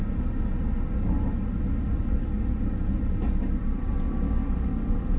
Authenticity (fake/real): real